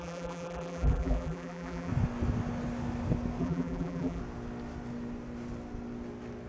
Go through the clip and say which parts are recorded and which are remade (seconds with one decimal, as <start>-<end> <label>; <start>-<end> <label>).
0.0-1.9 remade; 1.9-3.4 recorded; 3.4-4.2 remade; 4.2-6.5 recorded